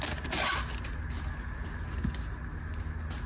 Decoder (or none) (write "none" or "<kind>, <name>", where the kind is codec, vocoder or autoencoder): none